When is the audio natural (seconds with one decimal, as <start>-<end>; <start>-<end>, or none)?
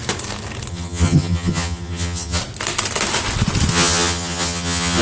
0.0-0.7; 2.4-3.7